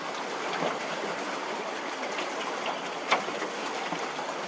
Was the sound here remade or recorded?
recorded